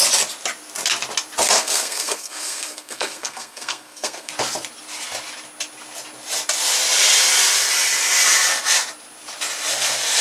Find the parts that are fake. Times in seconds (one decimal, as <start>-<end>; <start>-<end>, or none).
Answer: 1.6-4.3